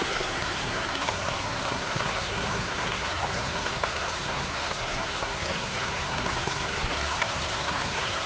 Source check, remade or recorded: remade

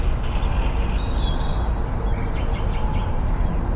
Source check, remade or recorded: recorded